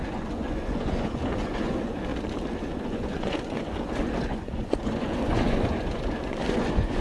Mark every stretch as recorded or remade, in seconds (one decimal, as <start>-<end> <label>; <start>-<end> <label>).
0.0-2.1 remade; 2.1-2.6 recorded; 2.6-7.0 remade